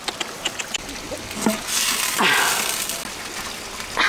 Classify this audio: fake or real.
real